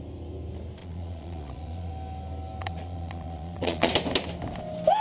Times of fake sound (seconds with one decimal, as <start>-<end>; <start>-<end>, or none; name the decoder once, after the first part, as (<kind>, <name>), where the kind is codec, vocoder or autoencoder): 0.8-1.9 (vocoder, Vocos); 2.6-3.9